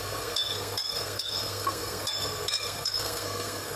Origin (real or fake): fake